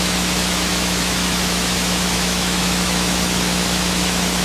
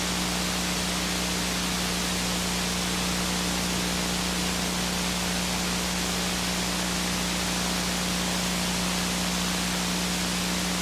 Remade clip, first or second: first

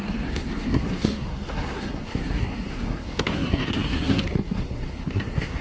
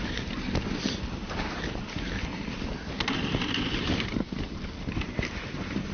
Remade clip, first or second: first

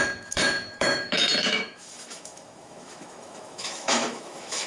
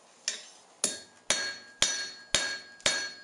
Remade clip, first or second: first